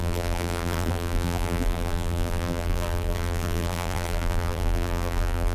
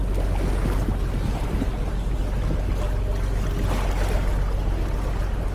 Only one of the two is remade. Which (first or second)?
first